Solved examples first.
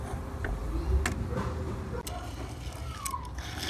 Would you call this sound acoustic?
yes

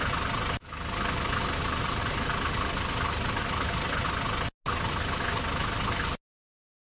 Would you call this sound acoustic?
yes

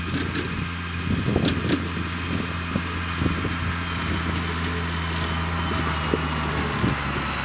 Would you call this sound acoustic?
yes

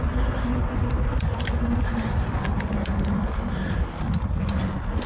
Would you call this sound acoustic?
yes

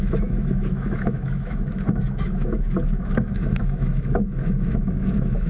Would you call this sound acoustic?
no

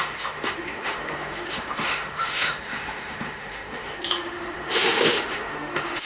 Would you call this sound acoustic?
no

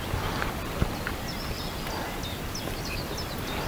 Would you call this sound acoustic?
yes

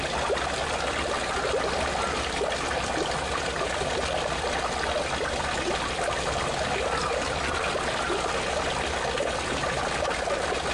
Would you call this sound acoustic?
yes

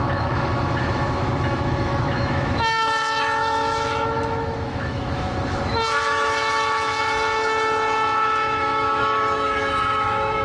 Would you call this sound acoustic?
no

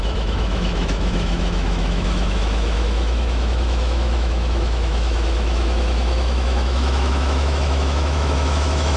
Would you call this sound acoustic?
no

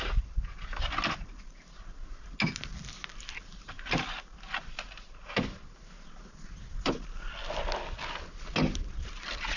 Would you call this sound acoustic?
yes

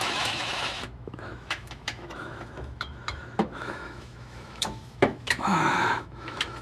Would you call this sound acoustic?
no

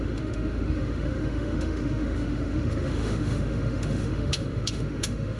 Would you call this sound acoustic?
no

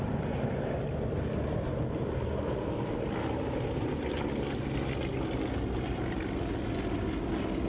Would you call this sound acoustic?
yes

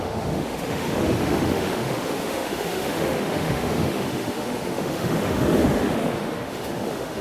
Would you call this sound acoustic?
no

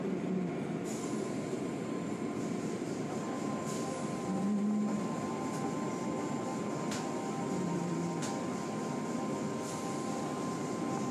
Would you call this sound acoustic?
yes